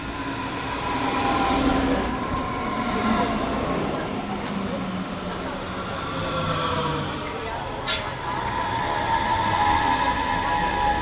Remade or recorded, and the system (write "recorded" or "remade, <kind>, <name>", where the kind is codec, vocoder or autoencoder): recorded